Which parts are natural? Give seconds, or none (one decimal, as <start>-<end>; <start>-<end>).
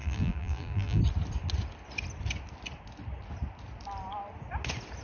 1.0-5.0